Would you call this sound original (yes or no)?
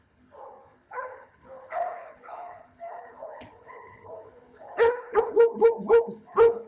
no